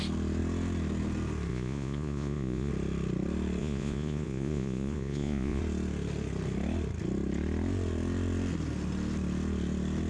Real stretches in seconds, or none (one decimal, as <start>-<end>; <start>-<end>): 0.0-1.5; 2.7-3.6; 5.6-10.1